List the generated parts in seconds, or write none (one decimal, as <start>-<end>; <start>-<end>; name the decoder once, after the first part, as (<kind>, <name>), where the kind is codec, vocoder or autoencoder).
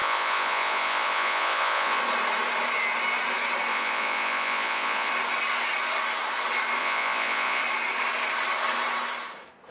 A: 0.0-2.0 (vocoder, Vocos); 3.7-5.1; 6.8-7.6